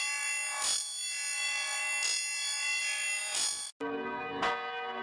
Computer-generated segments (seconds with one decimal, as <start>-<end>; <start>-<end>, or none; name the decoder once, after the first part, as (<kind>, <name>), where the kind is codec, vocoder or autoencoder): none